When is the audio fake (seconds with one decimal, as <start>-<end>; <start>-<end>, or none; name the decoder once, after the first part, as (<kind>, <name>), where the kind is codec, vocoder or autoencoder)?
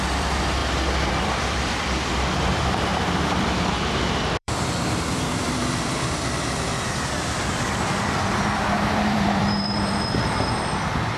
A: 0.0-0.6 (vocoder, BigVGAN v2); 1.1-11.2